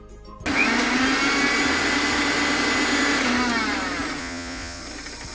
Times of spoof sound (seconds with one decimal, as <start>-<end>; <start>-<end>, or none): 4.2-4.8